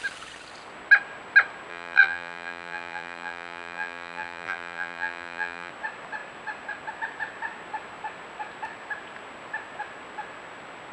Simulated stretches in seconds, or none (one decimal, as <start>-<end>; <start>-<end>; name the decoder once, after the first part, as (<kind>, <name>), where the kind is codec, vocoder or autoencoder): 1.7-5.7 (vocoder, BigVGAN v2)